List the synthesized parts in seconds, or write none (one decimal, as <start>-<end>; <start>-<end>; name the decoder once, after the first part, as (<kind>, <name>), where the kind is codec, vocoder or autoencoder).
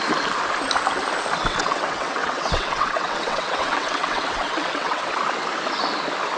1.4-5.2 (vocoder, WaveNeXt)